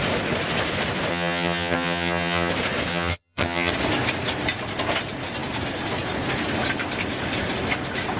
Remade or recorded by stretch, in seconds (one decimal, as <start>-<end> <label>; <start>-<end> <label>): 0.0-1.1 recorded; 1.1-2.5 remade; 2.5-2.9 recorded; 2.9-3.7 remade; 3.7-8.2 recorded